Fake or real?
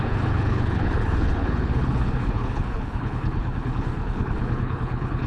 fake